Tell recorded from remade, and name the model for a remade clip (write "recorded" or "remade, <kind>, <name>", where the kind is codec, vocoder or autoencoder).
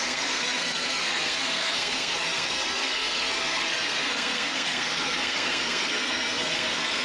remade, codec, SNAC